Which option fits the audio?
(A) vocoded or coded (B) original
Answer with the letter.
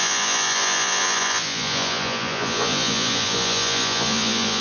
A